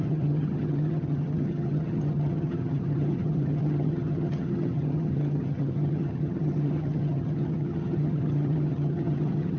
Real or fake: fake